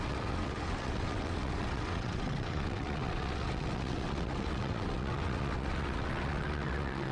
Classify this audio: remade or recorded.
remade